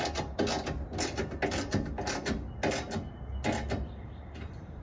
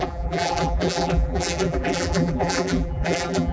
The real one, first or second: first